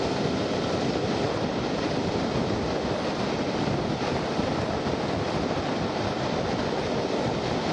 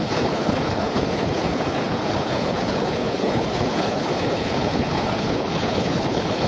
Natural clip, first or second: first